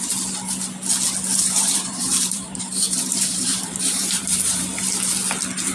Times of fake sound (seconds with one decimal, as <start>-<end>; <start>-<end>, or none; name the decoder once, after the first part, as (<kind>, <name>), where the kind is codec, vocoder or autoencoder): 1.3-4.7 (vocoder, BigVGAN v2)